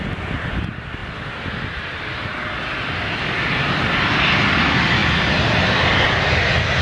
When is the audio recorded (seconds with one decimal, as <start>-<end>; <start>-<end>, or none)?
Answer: 0.0-6.8